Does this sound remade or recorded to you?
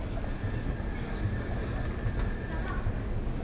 recorded